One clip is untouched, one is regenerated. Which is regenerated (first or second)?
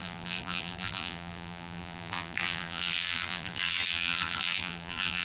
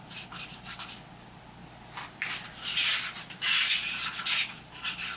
first